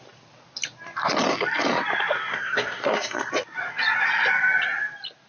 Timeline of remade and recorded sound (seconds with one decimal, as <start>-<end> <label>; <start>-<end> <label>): 0.0-2.3 recorded; 2.3-3.3 remade; 3.3-5.3 recorded

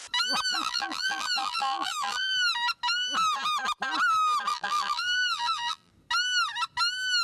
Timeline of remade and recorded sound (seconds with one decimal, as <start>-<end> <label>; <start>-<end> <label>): 0.0-0.5 recorded; 0.5-2.3 remade; 2.3-4.5 recorded; 4.5-5.9 remade; 5.9-7.2 recorded